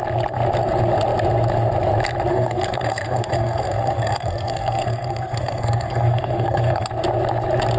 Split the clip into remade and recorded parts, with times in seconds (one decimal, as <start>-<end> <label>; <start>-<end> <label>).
0.0-2.3 recorded; 2.3-6.9 remade; 6.9-7.8 recorded

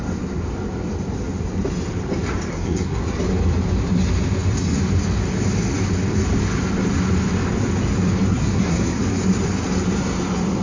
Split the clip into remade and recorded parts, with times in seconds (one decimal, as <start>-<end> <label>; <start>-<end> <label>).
0.0-2.5 recorded; 2.5-3.0 remade; 3.0-8.3 recorded; 8.3-9.0 remade; 9.0-10.6 recorded

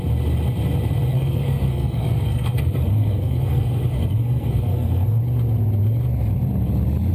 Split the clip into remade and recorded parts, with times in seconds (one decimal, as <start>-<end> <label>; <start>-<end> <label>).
0.0-1.1 recorded; 1.1-5.2 remade; 5.2-7.1 recorded

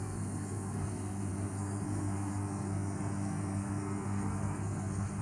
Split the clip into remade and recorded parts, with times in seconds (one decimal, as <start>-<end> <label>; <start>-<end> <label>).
0.0-5.2 remade